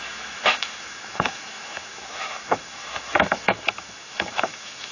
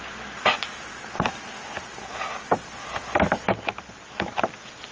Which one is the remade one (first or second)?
first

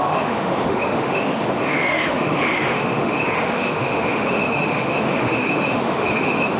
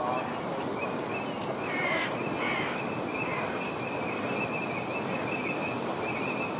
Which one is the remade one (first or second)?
first